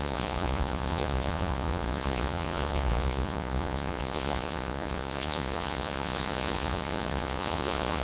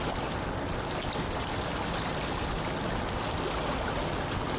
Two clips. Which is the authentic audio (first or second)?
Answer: second